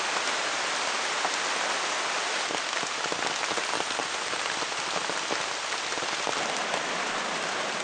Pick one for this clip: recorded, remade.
recorded